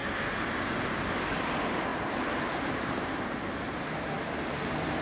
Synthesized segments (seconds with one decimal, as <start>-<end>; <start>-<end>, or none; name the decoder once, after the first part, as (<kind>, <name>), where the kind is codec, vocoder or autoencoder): 1.9-5.0 (vocoder, BigVGAN v2)